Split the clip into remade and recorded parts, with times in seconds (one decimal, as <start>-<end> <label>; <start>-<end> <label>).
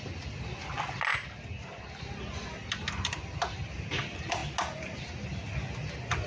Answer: 0.0-6.3 recorded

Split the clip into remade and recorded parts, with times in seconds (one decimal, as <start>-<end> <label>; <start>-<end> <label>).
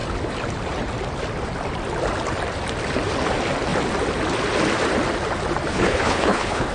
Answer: 0.0-5.7 recorded; 5.7-6.7 remade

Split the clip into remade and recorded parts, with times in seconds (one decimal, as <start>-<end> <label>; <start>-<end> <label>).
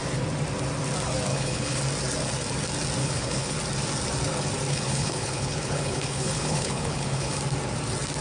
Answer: 0.0-1.3 recorded; 1.3-1.8 remade; 1.8-3.0 recorded; 3.0-3.5 remade; 3.5-4.7 recorded; 4.7-7.4 remade; 7.4-8.2 recorded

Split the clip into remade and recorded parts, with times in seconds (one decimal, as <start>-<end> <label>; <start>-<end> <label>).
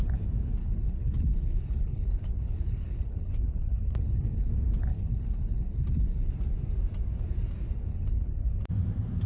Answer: 0.0-0.6 recorded; 0.6-4.5 remade; 4.5-4.9 recorded; 4.9-6.3 remade; 6.3-7.9 recorded; 7.9-8.6 remade; 8.6-9.3 recorded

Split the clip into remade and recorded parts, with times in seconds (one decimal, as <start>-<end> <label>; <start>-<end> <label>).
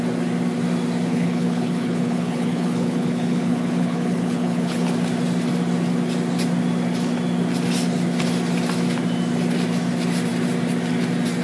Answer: 0.0-1.1 recorded; 1.1-4.9 remade; 4.9-11.4 recorded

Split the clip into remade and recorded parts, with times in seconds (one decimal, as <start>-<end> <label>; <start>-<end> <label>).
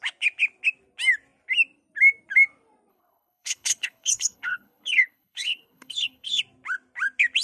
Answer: 0.0-2.9 recorded; 2.9-6.4 remade; 6.4-7.4 recorded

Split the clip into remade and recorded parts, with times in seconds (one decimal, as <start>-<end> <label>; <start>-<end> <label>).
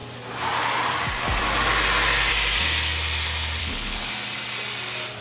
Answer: 0.0-3.6 recorded; 3.6-4.1 remade; 4.1-5.2 recorded